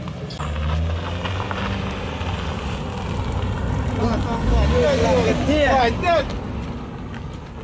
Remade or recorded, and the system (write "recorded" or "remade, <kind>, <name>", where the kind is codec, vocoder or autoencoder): recorded